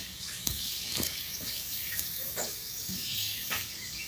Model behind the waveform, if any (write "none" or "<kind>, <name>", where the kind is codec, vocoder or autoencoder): codec, DAC